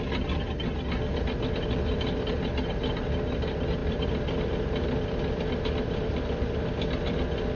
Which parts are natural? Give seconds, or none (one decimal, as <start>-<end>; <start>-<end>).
0.0-7.6